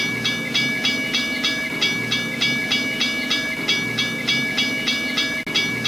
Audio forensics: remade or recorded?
recorded